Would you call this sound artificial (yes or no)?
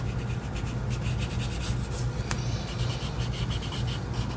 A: no